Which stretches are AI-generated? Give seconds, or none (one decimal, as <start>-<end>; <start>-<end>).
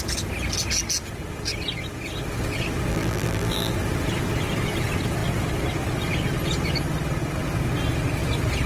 2.9-3.7